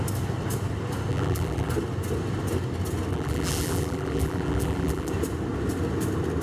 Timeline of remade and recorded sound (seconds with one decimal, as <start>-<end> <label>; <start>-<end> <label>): 0.0-1.1 recorded; 1.1-1.7 remade; 1.7-3.1 recorded; 3.1-5.1 remade; 5.1-6.4 recorded